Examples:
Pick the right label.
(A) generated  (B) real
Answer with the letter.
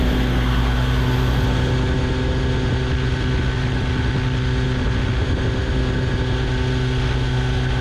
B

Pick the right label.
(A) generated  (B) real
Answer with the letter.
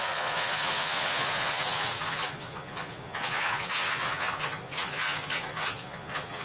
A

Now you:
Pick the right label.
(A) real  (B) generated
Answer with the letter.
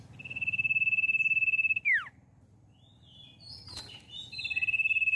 A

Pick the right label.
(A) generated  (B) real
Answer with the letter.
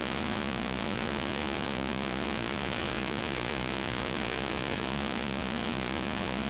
A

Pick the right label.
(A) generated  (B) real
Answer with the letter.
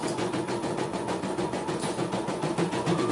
A